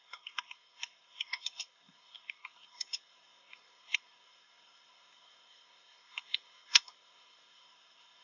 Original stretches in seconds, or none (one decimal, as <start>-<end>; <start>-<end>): none